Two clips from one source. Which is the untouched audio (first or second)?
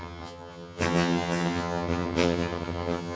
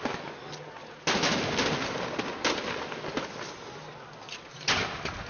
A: second